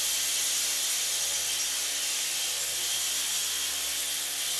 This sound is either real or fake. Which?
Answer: real